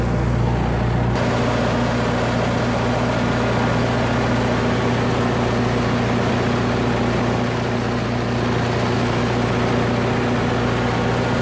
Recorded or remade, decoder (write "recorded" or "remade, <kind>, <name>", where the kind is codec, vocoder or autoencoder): recorded